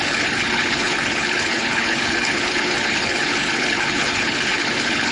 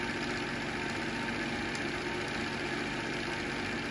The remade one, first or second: first